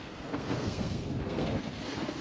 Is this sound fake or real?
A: fake